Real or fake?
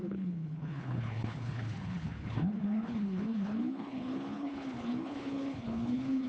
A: fake